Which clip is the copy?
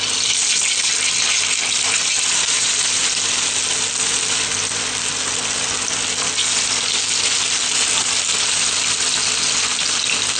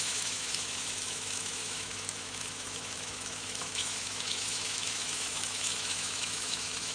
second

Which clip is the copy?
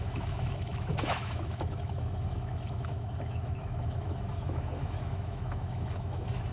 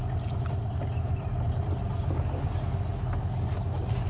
first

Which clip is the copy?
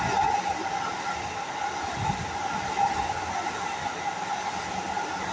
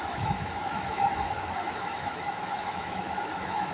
second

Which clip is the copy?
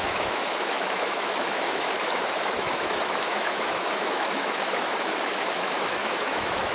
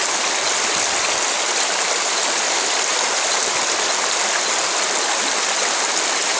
first